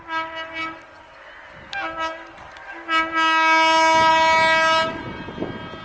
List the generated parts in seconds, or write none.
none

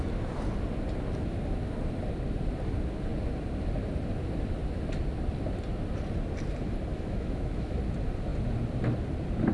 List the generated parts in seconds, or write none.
6.9-7.8 (autoencoder, DAC-VAE)

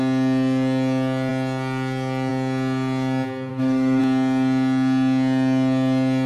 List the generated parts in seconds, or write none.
3.5-4.0 (autoencoder, DAC-VAE)

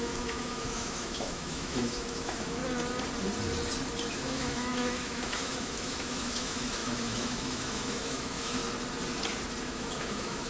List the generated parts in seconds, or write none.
0.0-2.6 (autoencoder, DAC-VAE); 4.1-8.6; 9.6-10.5

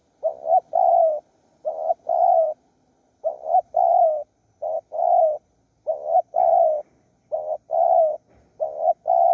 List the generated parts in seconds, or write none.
none